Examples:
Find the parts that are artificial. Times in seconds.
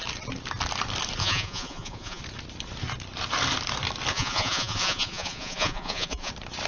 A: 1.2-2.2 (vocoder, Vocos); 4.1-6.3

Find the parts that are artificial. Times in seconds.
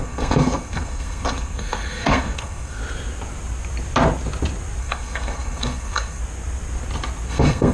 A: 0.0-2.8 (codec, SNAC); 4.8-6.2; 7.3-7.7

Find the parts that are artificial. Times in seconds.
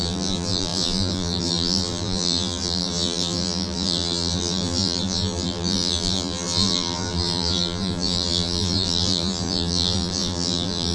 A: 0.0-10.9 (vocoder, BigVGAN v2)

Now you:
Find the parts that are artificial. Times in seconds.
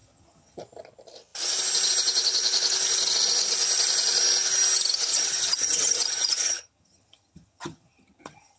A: 0.0-0.6 (vocoder, HiFi-GAN); 5.1-8.6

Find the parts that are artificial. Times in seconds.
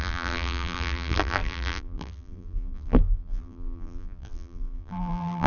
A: 0.0-5.5 (vocoder, BigVGAN v2)